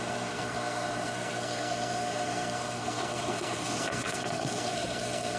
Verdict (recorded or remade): remade